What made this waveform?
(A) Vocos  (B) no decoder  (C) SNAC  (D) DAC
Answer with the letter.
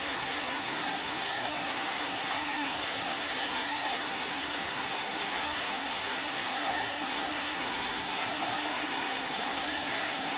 C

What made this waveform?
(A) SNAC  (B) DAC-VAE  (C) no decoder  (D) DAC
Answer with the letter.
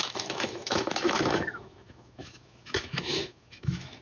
B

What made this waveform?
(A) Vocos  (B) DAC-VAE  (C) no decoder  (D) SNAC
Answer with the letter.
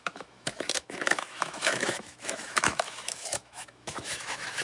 B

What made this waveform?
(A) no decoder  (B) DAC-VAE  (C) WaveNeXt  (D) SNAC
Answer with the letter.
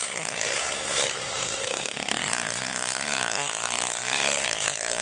D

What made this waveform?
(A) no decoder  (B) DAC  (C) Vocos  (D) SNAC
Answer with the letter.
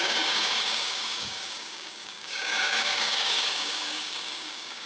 B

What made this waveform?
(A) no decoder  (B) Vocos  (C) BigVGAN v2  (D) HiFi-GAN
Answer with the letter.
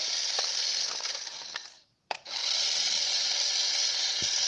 C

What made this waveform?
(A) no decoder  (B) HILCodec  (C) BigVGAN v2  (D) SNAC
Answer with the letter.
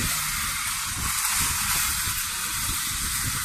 A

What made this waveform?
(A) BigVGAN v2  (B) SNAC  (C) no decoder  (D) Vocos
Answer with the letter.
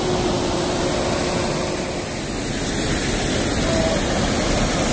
C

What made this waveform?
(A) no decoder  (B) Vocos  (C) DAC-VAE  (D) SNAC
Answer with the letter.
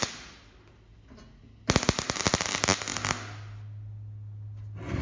A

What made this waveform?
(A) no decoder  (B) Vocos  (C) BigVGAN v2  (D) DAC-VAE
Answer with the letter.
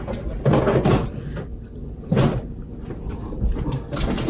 A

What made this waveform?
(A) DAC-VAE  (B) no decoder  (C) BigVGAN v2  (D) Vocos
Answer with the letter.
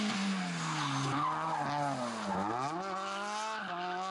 B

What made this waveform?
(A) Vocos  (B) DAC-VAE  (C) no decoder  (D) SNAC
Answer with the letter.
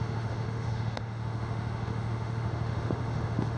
B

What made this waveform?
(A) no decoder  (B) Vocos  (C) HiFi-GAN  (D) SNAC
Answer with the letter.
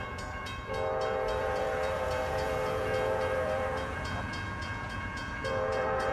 B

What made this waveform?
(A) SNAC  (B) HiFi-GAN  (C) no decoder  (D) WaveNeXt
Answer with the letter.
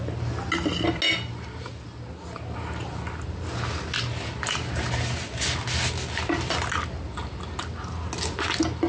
C